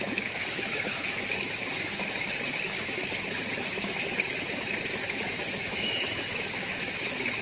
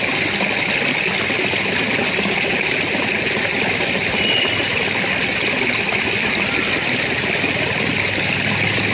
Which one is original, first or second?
second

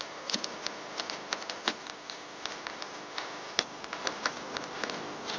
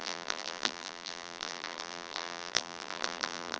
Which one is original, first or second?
first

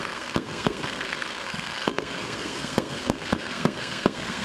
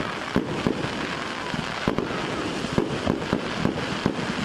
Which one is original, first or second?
second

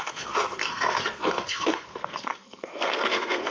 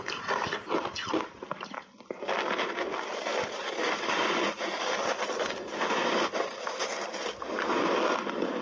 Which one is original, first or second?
second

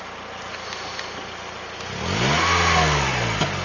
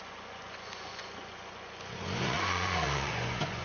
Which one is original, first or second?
first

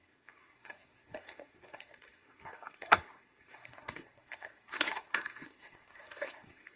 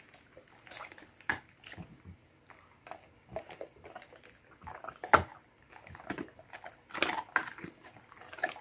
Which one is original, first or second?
second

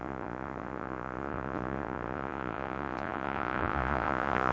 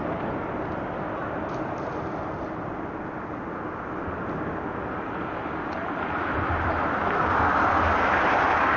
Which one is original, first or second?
second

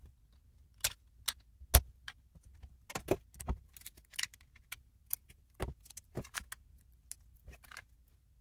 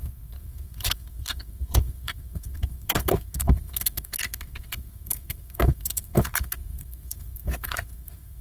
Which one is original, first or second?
first